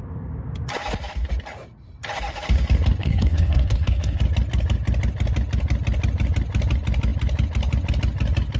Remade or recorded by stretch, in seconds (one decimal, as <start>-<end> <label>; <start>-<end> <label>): 0.0-3.0 recorded; 3.0-4.2 remade; 4.2-8.6 recorded